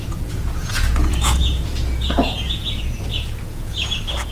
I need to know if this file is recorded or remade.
remade